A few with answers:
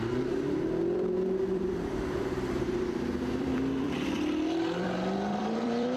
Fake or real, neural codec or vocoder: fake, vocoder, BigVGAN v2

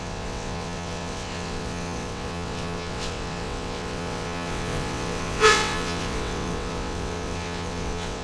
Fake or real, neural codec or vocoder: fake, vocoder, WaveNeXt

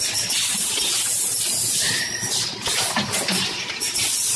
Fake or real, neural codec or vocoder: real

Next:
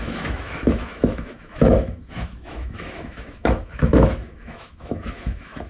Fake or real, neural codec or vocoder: fake, autoencoder, DAC-VAE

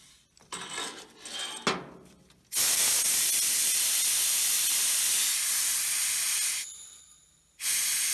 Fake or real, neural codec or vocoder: real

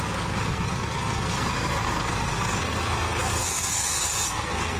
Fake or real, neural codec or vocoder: fake, codec, SNAC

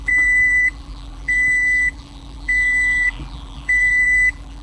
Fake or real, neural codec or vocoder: fake, vocoder, BigVGAN v2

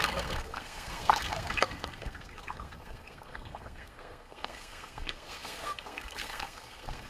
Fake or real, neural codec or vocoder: fake, codec, SNAC